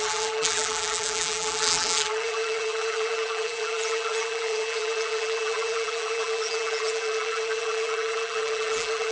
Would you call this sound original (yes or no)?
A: no